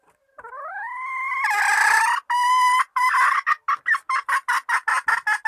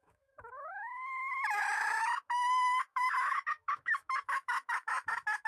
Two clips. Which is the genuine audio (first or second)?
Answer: first